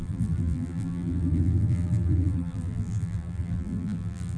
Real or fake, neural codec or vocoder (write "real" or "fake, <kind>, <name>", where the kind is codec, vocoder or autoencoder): fake, vocoder, BigVGAN v2